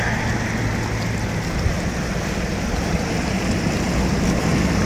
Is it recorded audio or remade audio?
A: recorded